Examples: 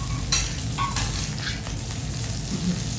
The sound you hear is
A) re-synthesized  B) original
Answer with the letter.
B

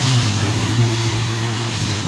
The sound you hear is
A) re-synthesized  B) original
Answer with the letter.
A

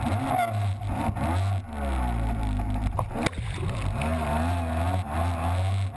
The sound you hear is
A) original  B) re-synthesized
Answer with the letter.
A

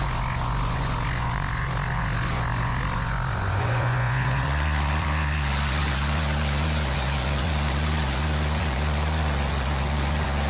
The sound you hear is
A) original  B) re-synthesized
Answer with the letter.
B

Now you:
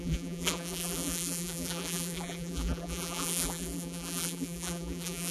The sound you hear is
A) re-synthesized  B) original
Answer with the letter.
A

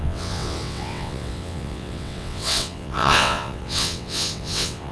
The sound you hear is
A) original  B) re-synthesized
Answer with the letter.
B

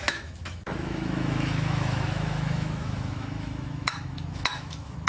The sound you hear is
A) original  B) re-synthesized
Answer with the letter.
B